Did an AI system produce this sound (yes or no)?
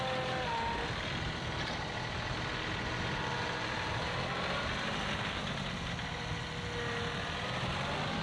no